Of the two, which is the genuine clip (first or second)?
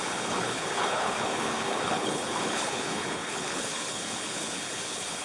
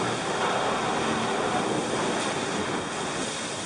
second